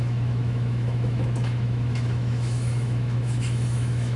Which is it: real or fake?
fake